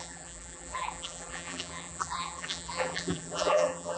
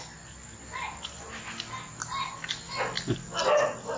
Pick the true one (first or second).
second